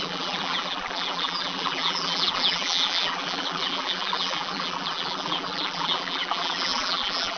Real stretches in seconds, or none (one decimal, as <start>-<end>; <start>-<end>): none